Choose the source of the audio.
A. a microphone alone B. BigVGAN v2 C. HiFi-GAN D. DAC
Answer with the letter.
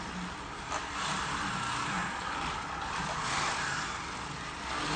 A